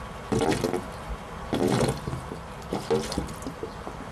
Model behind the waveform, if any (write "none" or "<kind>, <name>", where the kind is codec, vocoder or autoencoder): none